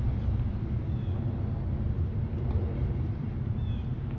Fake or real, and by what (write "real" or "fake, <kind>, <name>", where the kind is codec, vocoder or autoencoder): real